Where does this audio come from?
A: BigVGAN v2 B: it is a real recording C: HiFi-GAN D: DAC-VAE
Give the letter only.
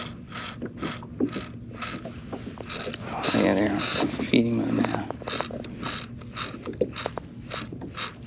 B